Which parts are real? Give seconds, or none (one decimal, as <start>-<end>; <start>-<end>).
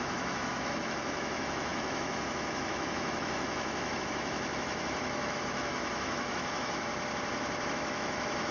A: 6.9-7.7